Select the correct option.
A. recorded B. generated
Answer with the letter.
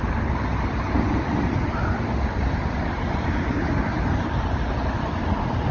A